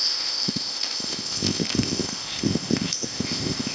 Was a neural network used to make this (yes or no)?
yes